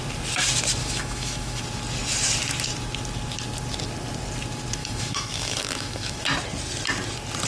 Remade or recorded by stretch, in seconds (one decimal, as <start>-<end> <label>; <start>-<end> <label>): 0.0-0.8 recorded; 0.8-1.6 remade; 1.6-4.8 recorded; 4.8-6.2 remade; 6.2-7.5 recorded